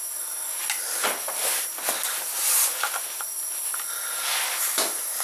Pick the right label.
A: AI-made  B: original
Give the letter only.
B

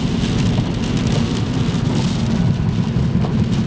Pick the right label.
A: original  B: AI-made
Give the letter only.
A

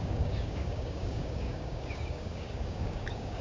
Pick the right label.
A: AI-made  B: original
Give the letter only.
A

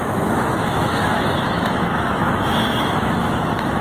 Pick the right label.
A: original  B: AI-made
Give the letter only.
B